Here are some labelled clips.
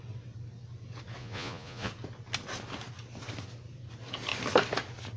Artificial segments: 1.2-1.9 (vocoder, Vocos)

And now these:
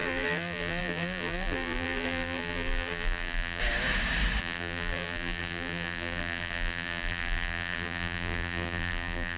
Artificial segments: 0.0-3.6 (vocoder, BigVGAN v2); 4.4-9.4

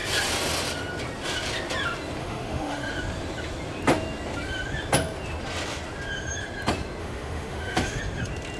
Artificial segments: 2.2-2.9 (autoencoder, DAC-VAE); 7.0-8.0